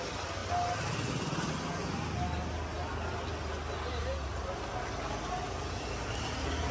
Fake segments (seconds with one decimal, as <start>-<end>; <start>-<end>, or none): none